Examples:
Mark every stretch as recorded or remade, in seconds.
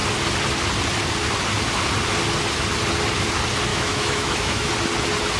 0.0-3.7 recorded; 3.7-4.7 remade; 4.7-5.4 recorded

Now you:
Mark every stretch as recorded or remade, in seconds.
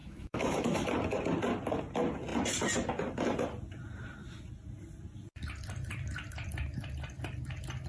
0.0-0.9 remade; 0.9-7.9 recorded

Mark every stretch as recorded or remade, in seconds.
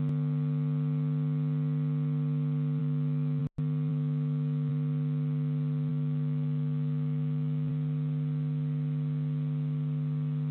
0.0-2.8 recorded; 2.8-3.4 remade; 3.4-3.9 recorded; 3.9-4.7 remade; 4.7-5.9 recorded; 5.9-7.7 remade; 7.7-10.5 recorded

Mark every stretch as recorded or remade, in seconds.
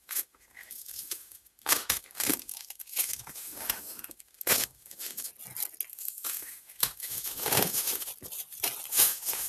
0.0-5.3 remade; 5.3-5.9 recorded; 5.9-8.1 remade; 8.1-8.9 recorded; 8.9-9.5 remade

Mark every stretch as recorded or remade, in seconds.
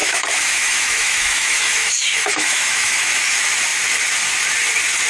0.0-3.1 remade; 3.1-5.1 recorded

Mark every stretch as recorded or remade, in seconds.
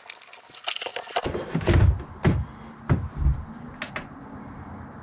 0.0-5.0 recorded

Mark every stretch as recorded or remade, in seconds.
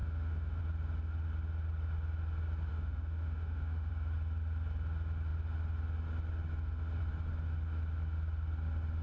0.0-0.6 remade; 0.6-2.7 recorded; 2.7-3.9 remade; 3.9-9.0 recorded